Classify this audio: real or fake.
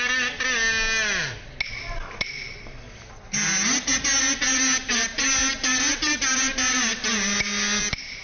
real